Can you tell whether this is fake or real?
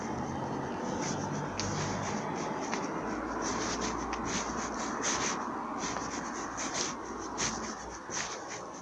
real